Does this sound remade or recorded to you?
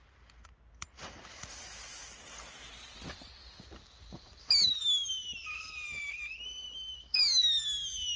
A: recorded